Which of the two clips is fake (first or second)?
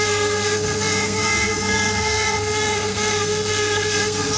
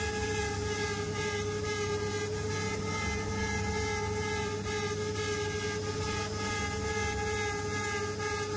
first